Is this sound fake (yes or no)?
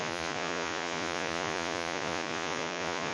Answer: yes